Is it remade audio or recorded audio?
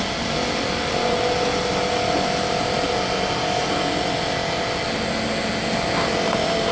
recorded